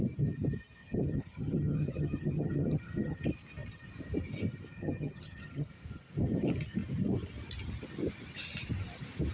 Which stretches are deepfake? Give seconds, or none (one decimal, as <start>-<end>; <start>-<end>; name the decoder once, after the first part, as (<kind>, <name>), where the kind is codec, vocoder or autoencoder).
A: 0.8-3.2 (vocoder, HiFi-GAN); 4.7-5.7